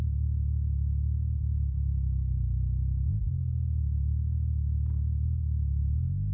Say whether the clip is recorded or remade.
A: recorded